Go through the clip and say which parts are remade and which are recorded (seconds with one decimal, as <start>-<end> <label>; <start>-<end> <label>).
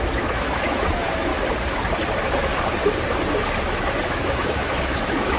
0.0-1.3 remade; 1.3-2.1 recorded; 2.1-2.5 remade; 2.5-3.6 recorded; 3.6-5.4 remade